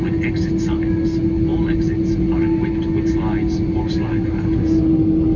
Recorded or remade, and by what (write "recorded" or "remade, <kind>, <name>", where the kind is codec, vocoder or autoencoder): recorded